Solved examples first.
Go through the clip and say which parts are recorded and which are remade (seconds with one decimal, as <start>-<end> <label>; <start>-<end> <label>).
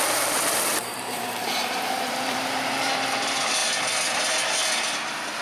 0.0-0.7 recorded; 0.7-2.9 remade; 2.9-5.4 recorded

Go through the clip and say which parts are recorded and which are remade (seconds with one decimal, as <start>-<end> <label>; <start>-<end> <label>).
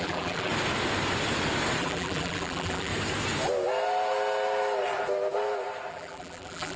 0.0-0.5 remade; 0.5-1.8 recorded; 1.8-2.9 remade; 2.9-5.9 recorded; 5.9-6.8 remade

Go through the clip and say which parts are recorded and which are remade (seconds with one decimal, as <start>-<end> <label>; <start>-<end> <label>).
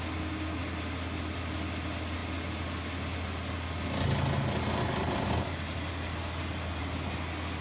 0.0-7.6 recorded